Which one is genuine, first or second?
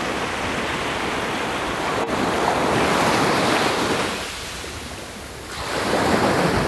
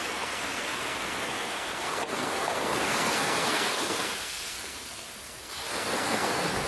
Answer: first